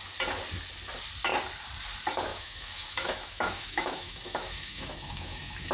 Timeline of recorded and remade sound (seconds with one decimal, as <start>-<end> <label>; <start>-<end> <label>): 0.0-2.3 recorded; 2.3-5.7 remade